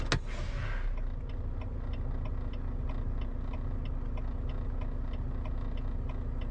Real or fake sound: real